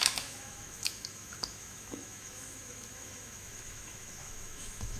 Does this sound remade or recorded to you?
remade